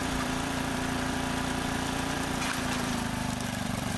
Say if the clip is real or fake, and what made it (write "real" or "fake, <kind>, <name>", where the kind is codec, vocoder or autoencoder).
fake, vocoder, BigVGAN v2